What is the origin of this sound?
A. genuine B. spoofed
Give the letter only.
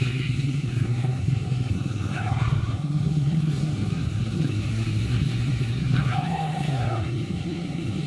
B